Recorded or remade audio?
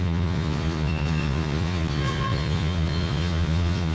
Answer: remade